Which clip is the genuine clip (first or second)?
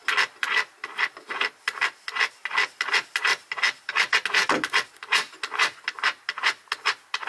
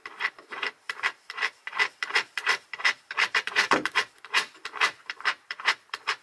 first